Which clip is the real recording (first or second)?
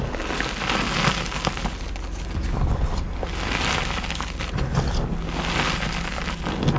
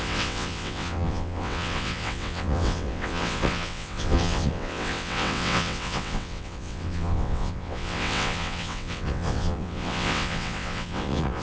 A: first